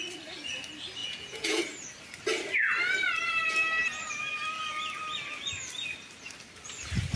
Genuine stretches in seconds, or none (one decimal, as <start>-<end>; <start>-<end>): 0.0-1.0; 1.6-7.2